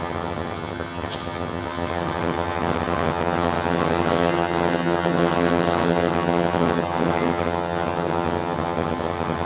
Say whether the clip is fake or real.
fake